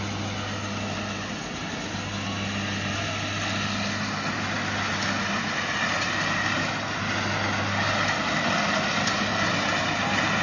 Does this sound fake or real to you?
real